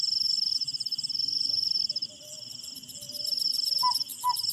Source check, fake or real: real